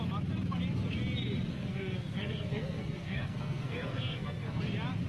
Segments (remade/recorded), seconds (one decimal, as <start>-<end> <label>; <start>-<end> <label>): 0.0-1.5 recorded; 1.5-4.6 remade; 4.6-5.1 recorded